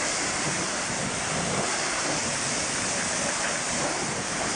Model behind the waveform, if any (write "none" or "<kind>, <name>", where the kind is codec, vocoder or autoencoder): vocoder, BigVGAN v2